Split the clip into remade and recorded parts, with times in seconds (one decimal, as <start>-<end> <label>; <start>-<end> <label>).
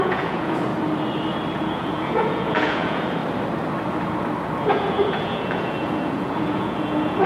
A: 0.0-0.7 remade; 0.7-1.5 recorded; 1.5-3.2 remade; 3.2-4.7 recorded; 4.7-7.3 remade